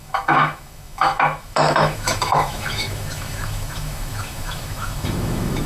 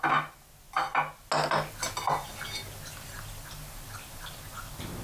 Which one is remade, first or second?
first